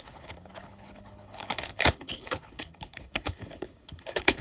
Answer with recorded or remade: remade